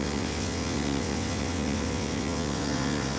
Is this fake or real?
fake